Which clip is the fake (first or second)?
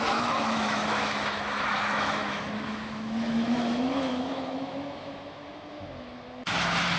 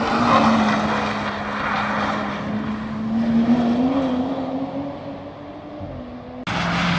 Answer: first